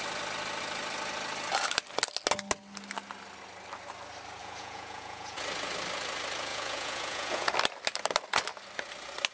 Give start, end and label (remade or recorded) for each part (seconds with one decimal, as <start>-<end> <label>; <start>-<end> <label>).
0.0-4.4 recorded; 4.4-5.4 remade; 5.4-6.5 recorded; 6.5-7.5 remade; 7.5-9.3 recorded